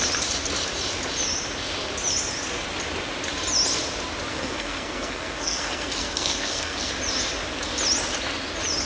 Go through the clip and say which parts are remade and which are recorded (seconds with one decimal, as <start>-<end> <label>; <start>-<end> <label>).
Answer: 0.0-4.3 recorded; 4.3-6.9 remade; 6.9-8.9 recorded